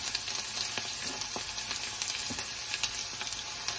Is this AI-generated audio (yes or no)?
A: no